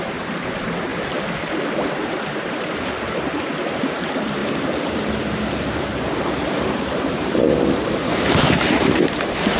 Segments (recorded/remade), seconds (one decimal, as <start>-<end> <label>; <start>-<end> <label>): 0.0-0.9 remade; 0.9-1.9 recorded; 1.9-9.6 remade